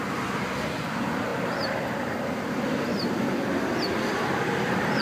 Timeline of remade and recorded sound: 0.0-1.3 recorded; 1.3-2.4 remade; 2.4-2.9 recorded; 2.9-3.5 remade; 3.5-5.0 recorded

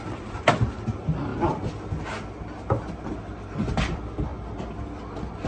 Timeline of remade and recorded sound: 0.0-1.3 remade; 1.3-2.4 recorded; 2.4-4.3 remade; 4.3-4.8 recorded; 4.8-5.5 remade

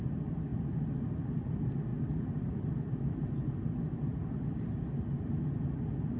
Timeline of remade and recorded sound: 0.0-0.5 recorded; 0.5-1.0 remade; 1.0-1.9 recorded; 1.9-5.6 remade; 5.6-6.2 recorded

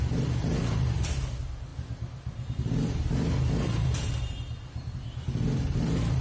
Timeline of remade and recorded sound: 0.0-6.2 recorded

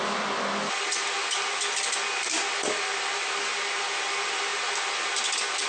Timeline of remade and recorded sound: 0.0-5.7 recorded

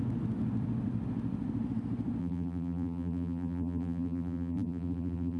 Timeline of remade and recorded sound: 0.0-2.2 recorded; 2.2-5.4 remade

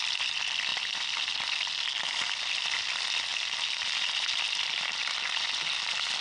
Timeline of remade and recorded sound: 0.0-6.2 recorded

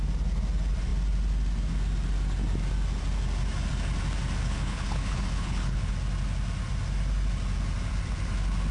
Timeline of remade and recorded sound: 0.0-4.4 recorded; 4.4-5.9 remade; 5.9-8.7 recorded